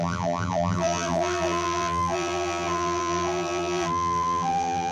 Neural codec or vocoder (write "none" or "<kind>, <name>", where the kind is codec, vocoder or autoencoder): vocoder, BigVGAN v2